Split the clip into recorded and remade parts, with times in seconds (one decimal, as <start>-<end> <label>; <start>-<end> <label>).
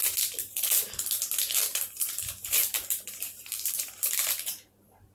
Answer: 0.0-1.7 recorded; 1.7-5.1 remade